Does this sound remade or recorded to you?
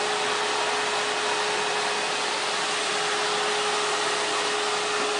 recorded